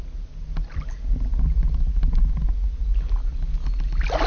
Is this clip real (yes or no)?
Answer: yes